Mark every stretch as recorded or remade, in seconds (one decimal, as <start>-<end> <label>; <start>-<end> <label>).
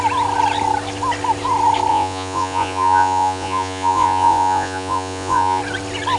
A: 0.0-1.9 recorded; 1.9-5.6 remade; 5.6-6.2 recorded